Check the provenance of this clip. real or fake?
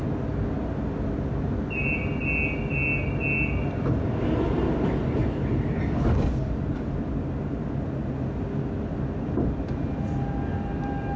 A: real